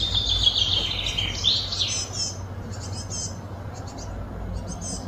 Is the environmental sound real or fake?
real